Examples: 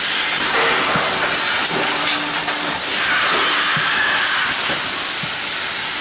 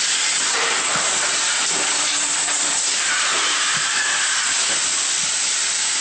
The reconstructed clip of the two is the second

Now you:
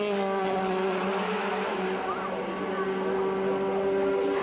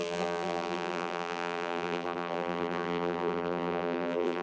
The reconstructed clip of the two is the second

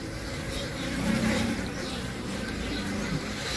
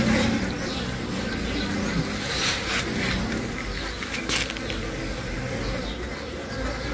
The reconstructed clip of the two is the first